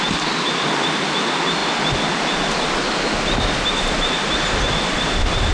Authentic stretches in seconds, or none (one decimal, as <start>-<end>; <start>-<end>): 0.0-5.5